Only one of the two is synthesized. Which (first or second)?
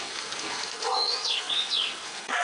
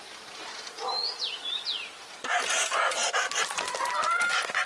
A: first